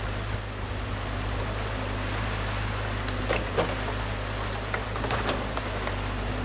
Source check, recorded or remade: recorded